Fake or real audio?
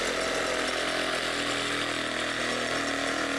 real